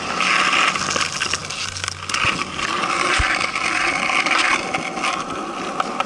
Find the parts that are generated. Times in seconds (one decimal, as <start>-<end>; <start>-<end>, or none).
none